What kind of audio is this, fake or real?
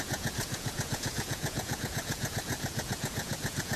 fake